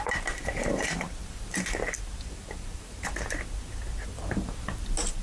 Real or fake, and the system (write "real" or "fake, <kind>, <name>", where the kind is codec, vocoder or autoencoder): fake, vocoder, BigVGAN v2